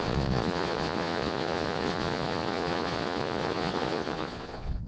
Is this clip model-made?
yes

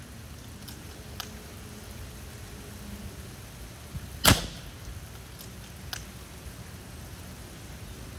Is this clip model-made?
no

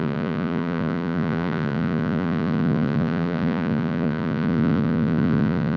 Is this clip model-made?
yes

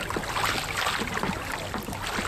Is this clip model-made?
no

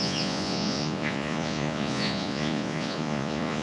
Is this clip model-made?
yes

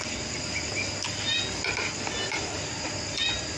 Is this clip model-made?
no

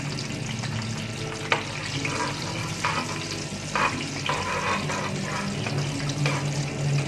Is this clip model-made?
no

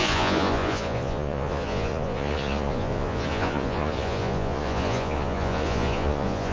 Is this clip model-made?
yes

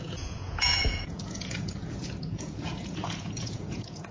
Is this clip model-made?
yes